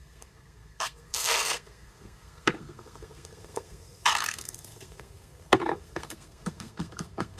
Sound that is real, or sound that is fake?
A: fake